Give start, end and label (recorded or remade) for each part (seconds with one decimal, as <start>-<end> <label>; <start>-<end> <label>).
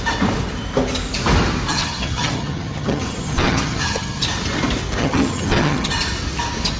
0.0-1.7 recorded; 1.7-4.2 remade; 4.2-5.0 recorded; 5.0-5.9 remade; 5.9-6.8 recorded